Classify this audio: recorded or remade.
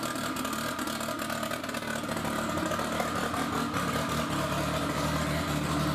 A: recorded